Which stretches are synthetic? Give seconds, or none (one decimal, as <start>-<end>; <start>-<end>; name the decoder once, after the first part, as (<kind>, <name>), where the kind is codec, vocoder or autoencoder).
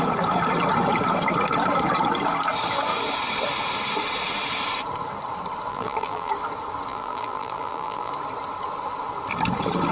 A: 5.7-6.3 (vocoder, BigVGAN v2); 6.9-8.1